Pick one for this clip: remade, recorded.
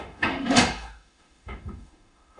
remade